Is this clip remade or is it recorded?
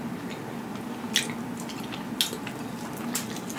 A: recorded